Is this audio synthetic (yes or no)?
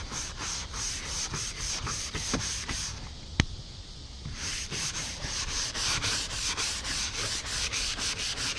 yes